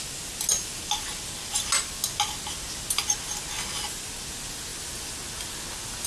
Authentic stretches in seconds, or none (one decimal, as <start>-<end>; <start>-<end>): 0.0-6.1